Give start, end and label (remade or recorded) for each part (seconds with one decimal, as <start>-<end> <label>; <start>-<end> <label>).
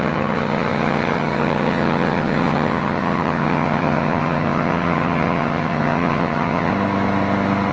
0.0-6.7 remade; 6.7-7.7 recorded